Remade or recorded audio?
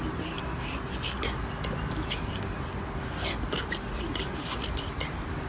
recorded